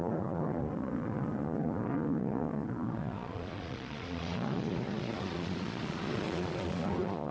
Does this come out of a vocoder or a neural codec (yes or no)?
yes